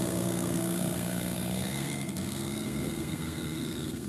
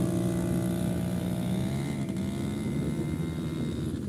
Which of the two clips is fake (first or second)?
first